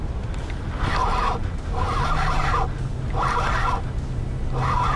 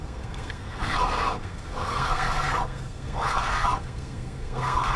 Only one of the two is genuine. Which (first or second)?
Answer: first